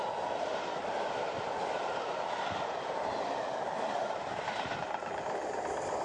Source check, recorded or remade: recorded